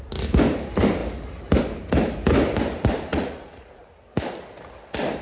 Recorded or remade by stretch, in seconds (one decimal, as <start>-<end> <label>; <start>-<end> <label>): 0.0-3.1 recorded; 3.1-3.8 remade; 3.8-5.2 recorded